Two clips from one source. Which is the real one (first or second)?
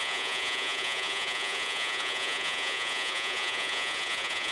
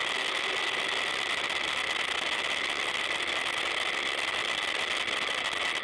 second